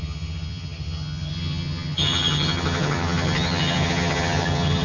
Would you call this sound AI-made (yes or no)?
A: yes